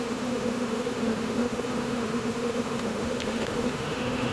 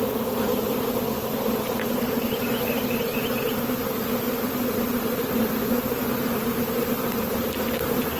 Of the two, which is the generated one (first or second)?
first